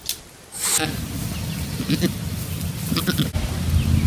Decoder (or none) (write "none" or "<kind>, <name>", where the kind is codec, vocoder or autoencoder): none